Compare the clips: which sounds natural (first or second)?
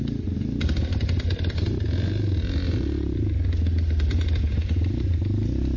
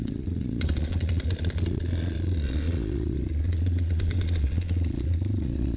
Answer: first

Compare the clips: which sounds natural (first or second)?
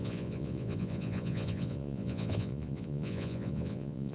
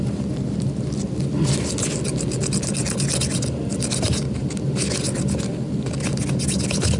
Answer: second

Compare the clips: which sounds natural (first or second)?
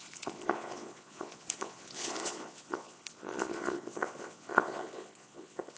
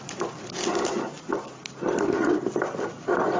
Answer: second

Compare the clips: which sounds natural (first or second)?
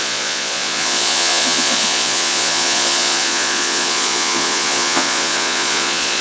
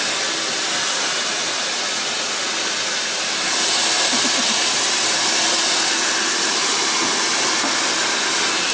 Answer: second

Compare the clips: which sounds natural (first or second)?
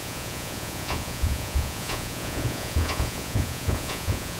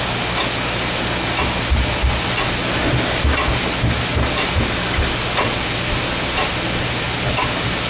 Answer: second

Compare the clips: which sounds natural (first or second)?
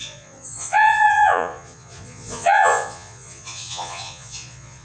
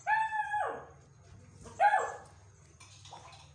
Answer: second